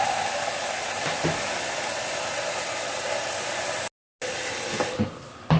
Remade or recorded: recorded